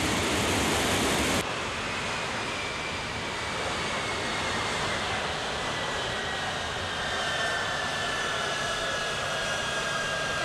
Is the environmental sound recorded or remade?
recorded